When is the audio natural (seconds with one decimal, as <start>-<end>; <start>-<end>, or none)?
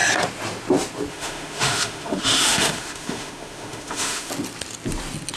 0.0-1.1; 4.3-5.4